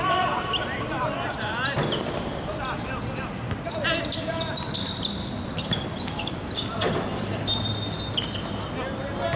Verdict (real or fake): real